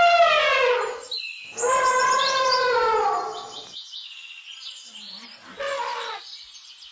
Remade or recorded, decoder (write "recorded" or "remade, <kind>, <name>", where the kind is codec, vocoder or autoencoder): recorded